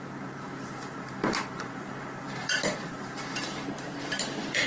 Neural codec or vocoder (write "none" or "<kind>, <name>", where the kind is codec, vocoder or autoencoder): vocoder, BigVGAN v2